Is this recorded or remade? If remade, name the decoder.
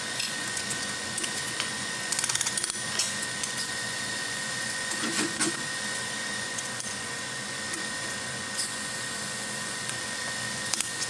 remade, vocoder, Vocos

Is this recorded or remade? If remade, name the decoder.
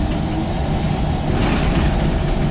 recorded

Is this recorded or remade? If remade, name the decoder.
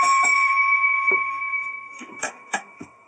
remade, autoencoder, DAC-VAE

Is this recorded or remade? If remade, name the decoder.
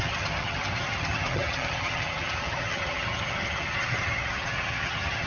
remade, vocoder, HiFi-GAN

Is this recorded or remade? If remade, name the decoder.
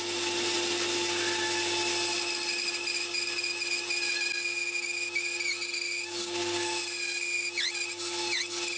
recorded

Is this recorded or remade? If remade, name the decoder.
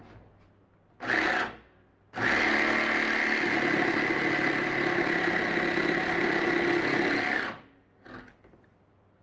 recorded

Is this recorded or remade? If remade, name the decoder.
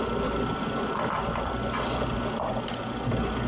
recorded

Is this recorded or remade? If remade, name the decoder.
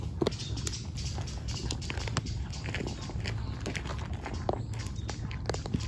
recorded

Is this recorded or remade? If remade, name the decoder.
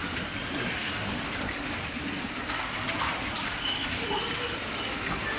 recorded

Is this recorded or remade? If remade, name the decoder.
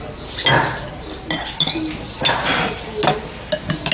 recorded